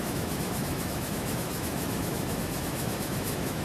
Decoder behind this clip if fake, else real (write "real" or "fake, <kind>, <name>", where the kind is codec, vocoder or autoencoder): fake, autoencoder, DAC-VAE